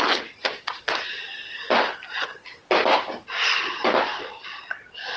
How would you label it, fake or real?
real